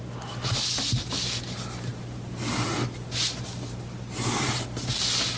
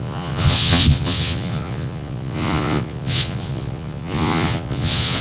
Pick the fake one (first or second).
second